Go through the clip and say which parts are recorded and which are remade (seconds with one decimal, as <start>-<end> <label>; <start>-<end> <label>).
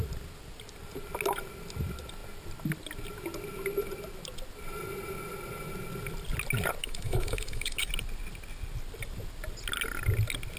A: 0.0-6.8 recorded; 6.8-7.9 remade; 7.9-10.6 recorded